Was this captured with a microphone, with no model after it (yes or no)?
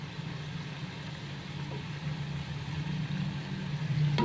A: yes